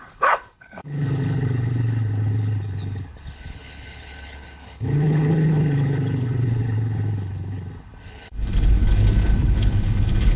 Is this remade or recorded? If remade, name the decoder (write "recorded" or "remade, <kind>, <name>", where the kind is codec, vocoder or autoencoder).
remade, codec, HILCodec